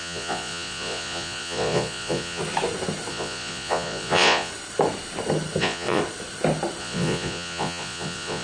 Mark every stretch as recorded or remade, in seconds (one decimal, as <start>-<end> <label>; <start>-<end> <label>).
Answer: 0.0-2.4 remade; 2.4-3.1 recorded; 3.1-4.5 remade; 4.5-5.6 recorded; 5.6-6.0 remade; 6.0-6.8 recorded; 6.8-8.4 remade